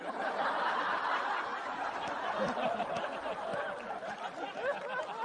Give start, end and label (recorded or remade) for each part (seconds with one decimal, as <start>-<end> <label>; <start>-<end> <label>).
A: 0.0-5.2 recorded